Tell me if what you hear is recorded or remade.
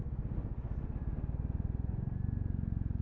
recorded